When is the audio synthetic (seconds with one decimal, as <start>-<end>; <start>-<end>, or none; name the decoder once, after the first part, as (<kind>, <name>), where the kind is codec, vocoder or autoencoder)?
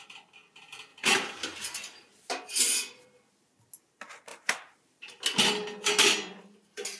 0.9-2.1 (vocoder, BigVGAN v2); 4.3-5.1